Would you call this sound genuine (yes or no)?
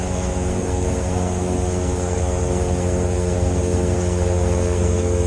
no